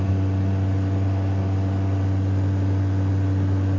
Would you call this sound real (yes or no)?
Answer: yes